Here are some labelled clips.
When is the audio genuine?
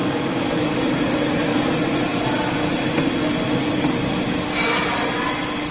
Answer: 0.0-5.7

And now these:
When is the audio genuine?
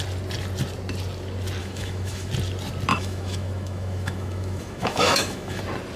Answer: 0.0-1.6; 2.3-2.9; 5.6-6.0